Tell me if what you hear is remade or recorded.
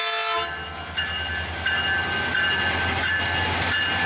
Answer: recorded